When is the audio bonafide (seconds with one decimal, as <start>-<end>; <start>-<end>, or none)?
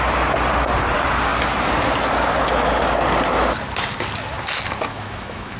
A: 0.0-4.9